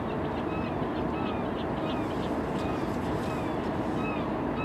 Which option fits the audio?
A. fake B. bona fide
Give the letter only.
B